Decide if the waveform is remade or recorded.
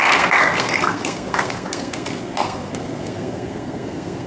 remade